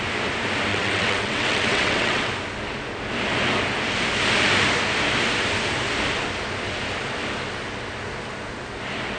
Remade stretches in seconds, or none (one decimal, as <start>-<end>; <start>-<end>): 0.7-2.3